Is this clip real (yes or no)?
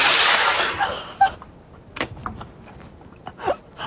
no